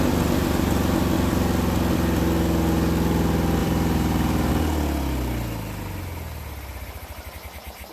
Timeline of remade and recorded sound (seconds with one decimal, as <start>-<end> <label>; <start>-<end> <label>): 0.0-3.6 recorded; 3.6-4.5 remade; 4.5-7.9 recorded